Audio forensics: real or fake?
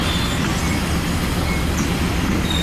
real